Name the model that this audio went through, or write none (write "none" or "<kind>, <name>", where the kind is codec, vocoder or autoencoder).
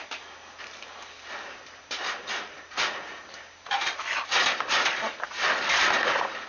none